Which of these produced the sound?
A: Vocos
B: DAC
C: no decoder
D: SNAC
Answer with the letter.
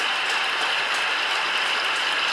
C